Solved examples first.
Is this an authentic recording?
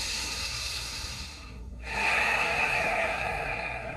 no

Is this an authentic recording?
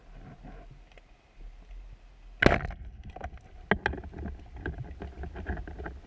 yes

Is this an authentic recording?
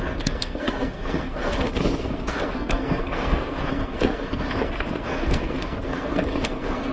no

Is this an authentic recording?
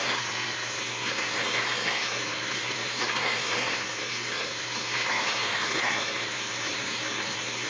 no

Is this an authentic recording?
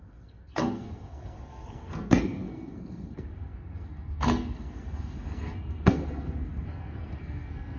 no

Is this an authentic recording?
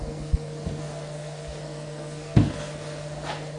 no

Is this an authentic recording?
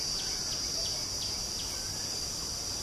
yes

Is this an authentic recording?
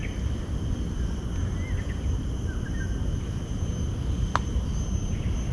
yes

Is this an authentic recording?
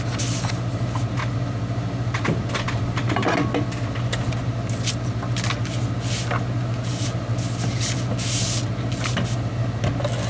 yes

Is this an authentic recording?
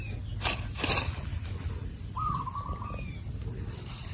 yes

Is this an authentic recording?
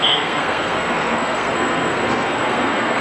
no